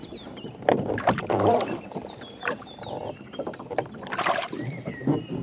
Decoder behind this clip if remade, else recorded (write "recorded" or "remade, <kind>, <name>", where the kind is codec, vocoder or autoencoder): remade, vocoder, BigVGAN v2